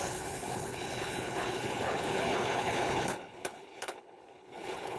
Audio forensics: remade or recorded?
remade